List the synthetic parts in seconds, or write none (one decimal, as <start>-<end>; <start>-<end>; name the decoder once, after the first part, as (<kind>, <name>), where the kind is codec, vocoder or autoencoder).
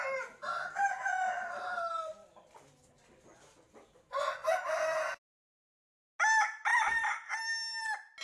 none